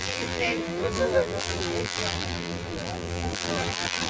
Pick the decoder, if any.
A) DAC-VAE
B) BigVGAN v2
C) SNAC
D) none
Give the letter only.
B